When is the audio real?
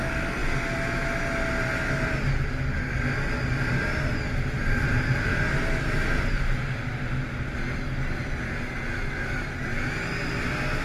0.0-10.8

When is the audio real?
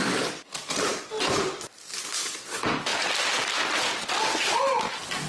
0.0-5.3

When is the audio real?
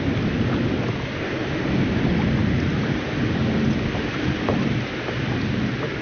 0.0-6.0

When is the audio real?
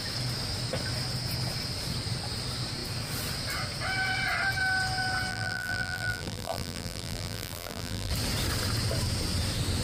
0.0-5.3; 8.1-9.8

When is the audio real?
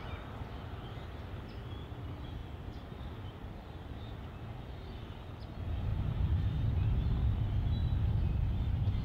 0.0-5.9; 6.7-7.8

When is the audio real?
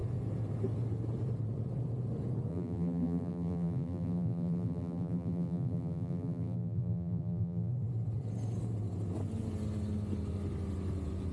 0.0-2.5; 7.7-11.3